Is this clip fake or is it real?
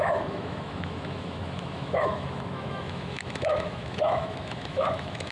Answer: fake